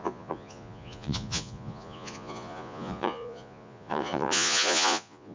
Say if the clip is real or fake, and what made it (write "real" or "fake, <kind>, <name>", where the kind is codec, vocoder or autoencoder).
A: fake, vocoder, Vocos